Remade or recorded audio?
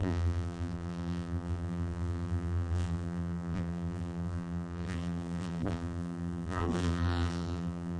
remade